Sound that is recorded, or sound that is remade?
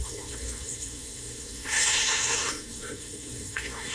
remade